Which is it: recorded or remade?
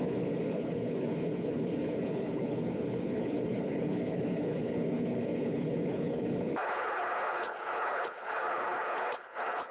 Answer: remade